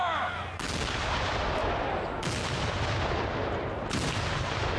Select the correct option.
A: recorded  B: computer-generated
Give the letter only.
A